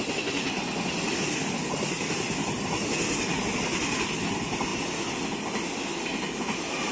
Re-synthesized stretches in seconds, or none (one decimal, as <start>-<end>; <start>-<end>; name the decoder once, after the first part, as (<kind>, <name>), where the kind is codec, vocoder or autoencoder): none